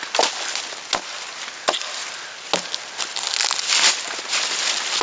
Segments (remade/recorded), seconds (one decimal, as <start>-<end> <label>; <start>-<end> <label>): 0.0-5.0 recorded